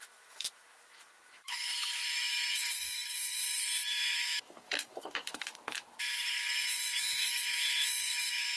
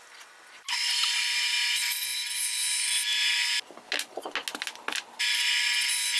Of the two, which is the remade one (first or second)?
first